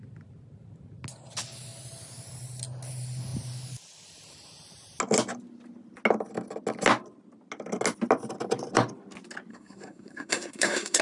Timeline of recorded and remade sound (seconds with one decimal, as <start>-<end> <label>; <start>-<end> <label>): 0.0-9.5 recorded; 9.5-11.0 remade